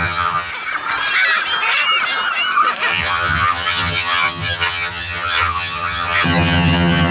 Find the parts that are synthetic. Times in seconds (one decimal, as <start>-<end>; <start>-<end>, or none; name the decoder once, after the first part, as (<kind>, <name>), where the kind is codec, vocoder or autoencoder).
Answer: 0.0-0.5 (vocoder, HiFi-GAN); 2.9-7.1